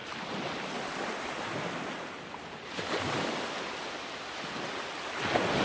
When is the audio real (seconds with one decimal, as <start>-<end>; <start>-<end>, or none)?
0.0-5.6